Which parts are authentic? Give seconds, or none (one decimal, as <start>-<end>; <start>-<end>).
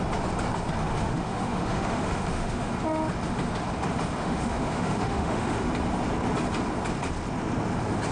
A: 0.0-0.8; 2.7-4.2; 5.7-8.1